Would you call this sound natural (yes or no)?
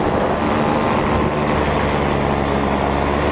yes